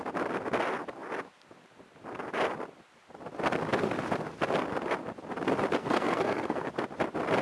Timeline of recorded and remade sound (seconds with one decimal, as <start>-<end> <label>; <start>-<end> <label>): 0.0-5.8 recorded; 5.8-6.7 remade; 6.7-7.4 recorded